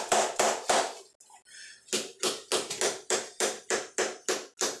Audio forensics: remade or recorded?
recorded